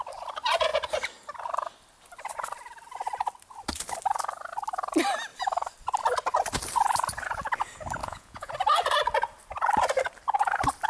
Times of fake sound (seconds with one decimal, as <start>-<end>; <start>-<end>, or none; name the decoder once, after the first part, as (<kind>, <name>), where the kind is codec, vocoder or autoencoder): 8.0-8.5 (vocoder, Vocos)